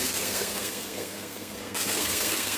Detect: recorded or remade remade